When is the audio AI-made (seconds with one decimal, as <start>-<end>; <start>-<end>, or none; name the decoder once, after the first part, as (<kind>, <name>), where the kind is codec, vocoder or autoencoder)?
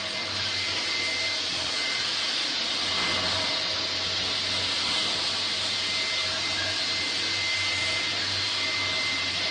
1.5-2.7 (vocoder, Vocos)